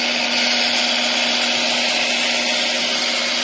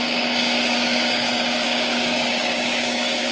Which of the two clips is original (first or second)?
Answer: first